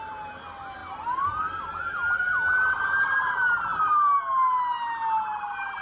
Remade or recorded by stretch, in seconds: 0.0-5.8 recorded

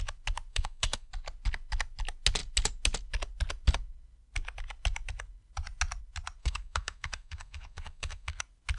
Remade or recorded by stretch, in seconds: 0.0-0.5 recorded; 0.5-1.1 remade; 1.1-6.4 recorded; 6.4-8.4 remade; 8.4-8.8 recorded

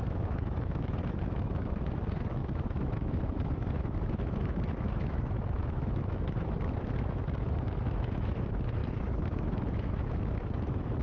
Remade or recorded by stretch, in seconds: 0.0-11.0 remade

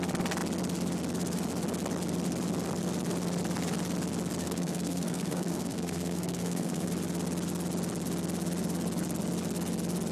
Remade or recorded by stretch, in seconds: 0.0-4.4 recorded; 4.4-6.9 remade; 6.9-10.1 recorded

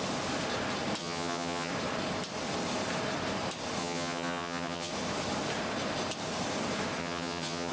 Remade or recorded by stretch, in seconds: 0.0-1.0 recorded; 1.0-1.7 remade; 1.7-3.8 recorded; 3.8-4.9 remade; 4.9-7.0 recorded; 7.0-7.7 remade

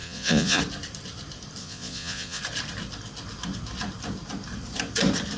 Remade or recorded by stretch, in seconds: 0.0-0.6 remade; 0.6-1.6 recorded; 1.6-2.4 remade; 2.4-5.4 recorded

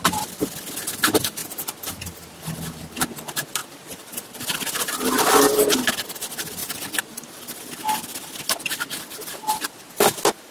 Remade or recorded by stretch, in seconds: 0.0-10.5 recorded